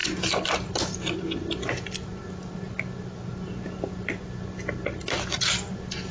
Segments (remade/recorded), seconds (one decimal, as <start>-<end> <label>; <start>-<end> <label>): 0.0-6.1 recorded